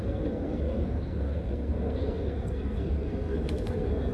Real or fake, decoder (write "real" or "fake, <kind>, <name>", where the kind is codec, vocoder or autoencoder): fake, codec, SNAC